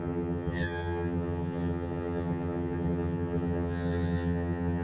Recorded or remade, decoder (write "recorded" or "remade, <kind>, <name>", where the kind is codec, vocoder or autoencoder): remade, vocoder, HiFi-GAN